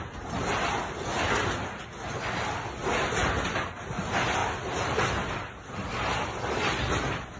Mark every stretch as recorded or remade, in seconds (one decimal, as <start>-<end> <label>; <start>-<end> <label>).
0.0-7.4 recorded